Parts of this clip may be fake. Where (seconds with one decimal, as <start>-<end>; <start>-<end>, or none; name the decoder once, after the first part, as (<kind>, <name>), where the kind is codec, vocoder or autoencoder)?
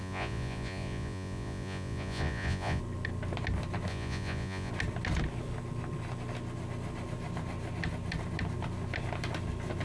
0.0-2.8 (vocoder, Vocos); 3.9-4.7